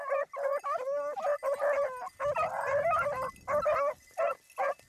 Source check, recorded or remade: recorded